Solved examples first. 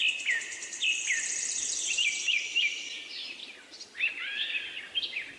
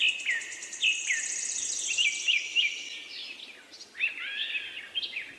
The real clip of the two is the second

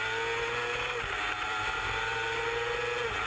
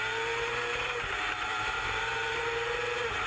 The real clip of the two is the first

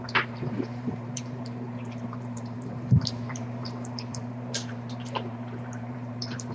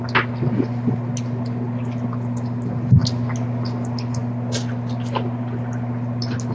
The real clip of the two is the second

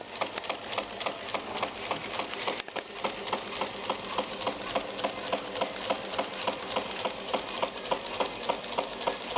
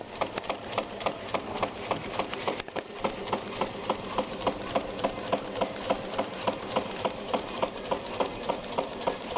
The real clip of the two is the first